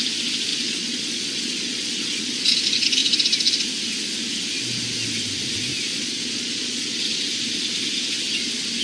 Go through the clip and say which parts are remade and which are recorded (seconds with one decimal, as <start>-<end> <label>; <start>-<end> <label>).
0.0-0.5 recorded; 0.5-2.6 remade; 2.6-5.9 recorded; 5.9-7.0 remade; 7.0-8.8 recorded